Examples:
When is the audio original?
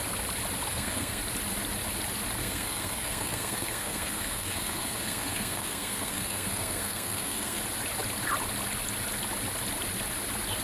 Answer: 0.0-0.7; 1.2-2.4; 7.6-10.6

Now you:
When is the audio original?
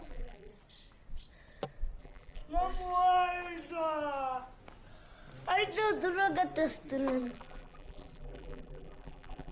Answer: 0.5-2.0; 2.4-7.2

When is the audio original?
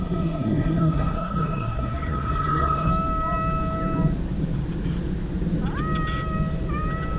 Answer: 2.9-7.2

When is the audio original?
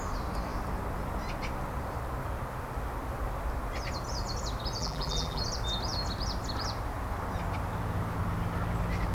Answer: 0.0-4.8; 5.4-9.1